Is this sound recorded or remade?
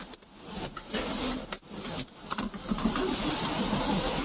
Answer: recorded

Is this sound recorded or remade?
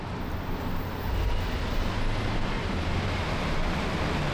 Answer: recorded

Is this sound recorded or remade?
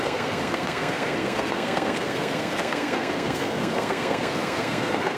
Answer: remade